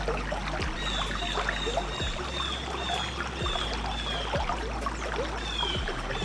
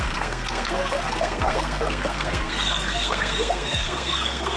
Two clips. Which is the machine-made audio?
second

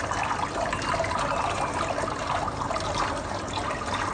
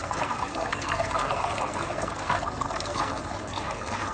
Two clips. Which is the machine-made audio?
second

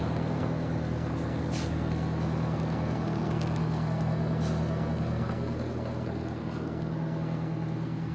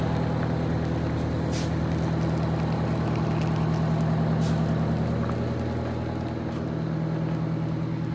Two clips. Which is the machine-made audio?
first